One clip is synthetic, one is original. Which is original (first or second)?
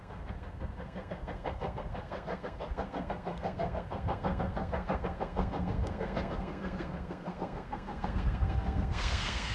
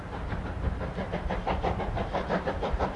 second